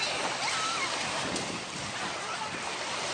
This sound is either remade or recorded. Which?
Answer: recorded